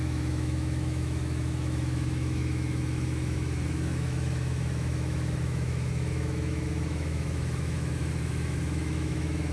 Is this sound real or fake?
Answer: fake